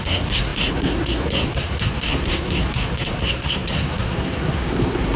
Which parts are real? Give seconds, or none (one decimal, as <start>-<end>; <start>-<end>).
none